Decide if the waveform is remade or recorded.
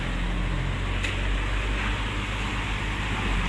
recorded